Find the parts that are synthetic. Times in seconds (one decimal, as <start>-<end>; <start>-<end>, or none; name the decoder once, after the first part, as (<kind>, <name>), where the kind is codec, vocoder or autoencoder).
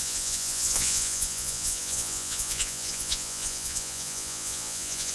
0.0-5.1 (vocoder, Vocos)